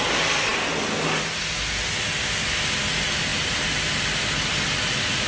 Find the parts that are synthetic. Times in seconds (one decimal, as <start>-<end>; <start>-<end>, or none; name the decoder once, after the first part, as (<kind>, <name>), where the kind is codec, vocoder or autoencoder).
none